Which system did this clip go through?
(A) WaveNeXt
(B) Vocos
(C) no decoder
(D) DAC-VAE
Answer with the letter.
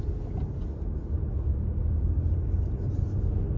C